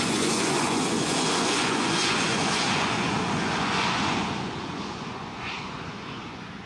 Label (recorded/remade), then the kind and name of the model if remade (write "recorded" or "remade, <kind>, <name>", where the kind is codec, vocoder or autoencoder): remade, vocoder, Vocos